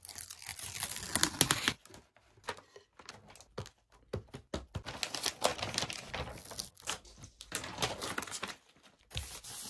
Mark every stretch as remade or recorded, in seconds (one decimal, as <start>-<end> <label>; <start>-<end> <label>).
0.0-9.7 recorded